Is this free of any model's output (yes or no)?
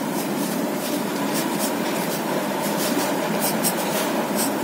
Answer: no